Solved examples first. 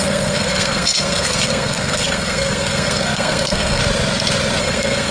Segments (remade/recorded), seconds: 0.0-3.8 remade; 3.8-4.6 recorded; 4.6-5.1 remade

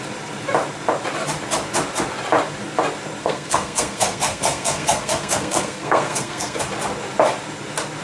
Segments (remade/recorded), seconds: 0.0-3.2 recorded; 3.2-6.6 remade; 6.6-8.0 recorded

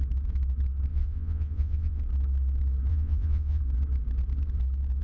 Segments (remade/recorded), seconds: 0.0-0.9 recorded; 0.9-2.0 remade; 2.0-2.9 recorded; 2.9-3.6 remade; 3.6-5.0 recorded

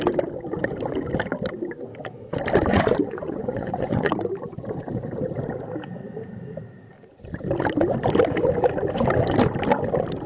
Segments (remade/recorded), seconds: 0.0-2.7 recorded; 2.7-4.1 remade; 4.1-10.3 recorded

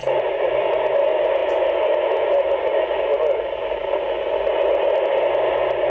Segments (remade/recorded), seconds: 0.0-0.5 remade; 0.5-5.9 recorded

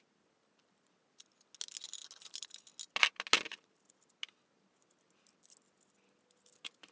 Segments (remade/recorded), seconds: 0.0-6.9 recorded